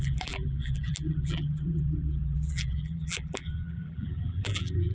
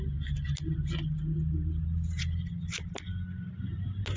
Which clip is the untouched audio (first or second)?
second